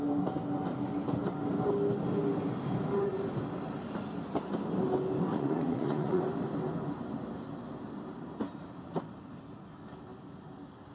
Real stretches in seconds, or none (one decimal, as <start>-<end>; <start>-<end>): 0.0-5.3; 6.2-10.9